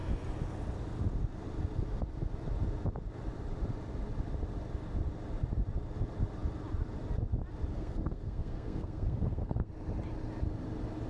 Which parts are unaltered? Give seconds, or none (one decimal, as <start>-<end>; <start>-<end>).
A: 0.0-7.7; 9.7-11.1

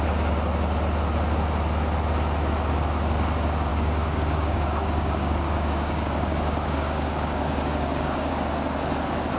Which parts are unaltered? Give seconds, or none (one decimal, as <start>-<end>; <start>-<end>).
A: 0.0-3.7; 8.3-9.4

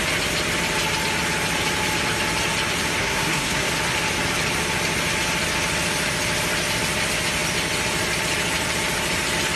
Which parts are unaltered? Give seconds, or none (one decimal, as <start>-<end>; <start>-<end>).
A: 0.0-3.0; 3.7-9.6

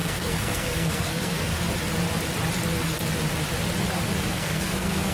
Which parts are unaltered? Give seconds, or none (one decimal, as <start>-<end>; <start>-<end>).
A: 1.5-4.3